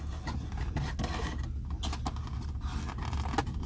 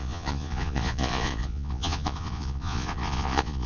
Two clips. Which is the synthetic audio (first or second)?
second